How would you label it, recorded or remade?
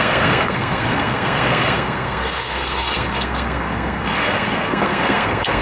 remade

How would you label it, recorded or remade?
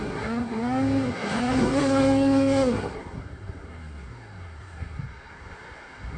remade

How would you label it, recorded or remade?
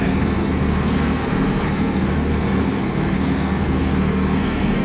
remade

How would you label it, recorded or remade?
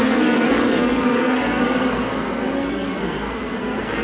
remade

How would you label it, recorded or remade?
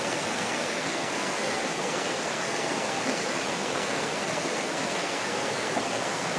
remade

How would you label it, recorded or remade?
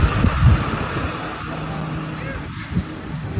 recorded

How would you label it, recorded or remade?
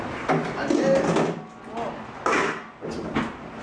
recorded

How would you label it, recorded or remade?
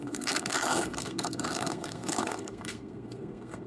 remade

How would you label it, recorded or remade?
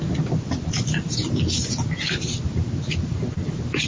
recorded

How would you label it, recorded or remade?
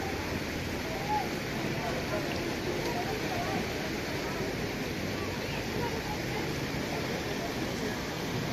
recorded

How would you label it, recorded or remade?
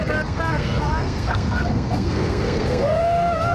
remade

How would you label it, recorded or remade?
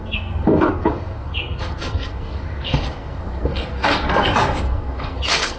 remade